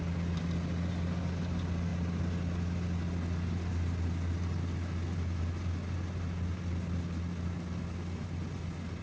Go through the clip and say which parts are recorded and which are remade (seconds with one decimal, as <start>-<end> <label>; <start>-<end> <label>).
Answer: 0.0-9.0 recorded